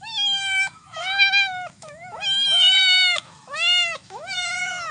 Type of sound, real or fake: fake